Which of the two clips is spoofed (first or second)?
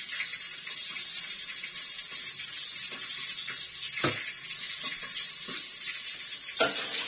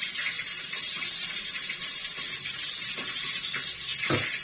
second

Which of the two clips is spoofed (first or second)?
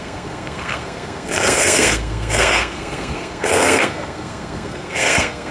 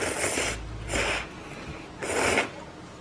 first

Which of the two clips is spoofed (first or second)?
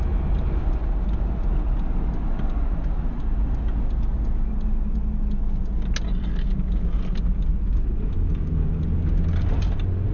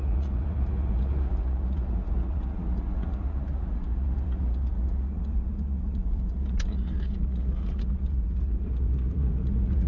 second